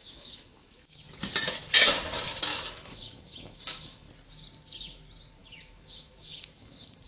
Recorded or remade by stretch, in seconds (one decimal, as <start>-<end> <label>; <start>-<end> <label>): 0.0-1.2 remade; 1.2-2.5 recorded; 2.5-4.1 remade; 4.1-5.4 recorded; 5.4-7.1 remade